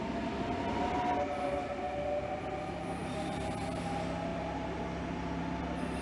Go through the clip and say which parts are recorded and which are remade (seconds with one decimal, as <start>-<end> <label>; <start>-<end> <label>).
0.0-3.0 recorded; 3.0-3.6 remade; 3.6-6.0 recorded